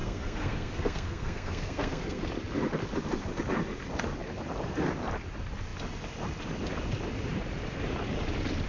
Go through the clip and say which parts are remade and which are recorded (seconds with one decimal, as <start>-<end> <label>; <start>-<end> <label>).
0.0-2.2 remade; 2.2-8.7 recorded